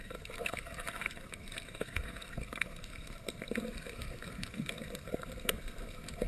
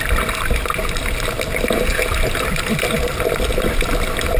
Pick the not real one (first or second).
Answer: first